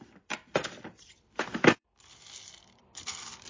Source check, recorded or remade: remade